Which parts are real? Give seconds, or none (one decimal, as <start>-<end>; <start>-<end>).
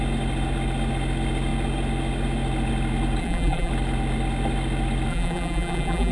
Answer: 0.0-3.2; 3.7-5.1